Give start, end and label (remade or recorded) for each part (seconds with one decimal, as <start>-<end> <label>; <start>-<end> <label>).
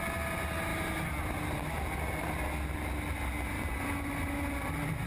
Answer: 0.0-5.1 recorded